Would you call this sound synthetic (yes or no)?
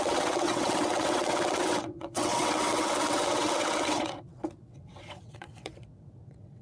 yes